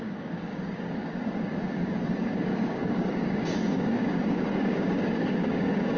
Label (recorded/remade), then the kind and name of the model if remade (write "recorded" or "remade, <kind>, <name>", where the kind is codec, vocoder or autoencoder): remade, codec, DAC